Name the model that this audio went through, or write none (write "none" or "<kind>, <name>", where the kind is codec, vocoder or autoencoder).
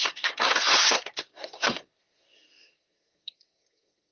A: codec, SNAC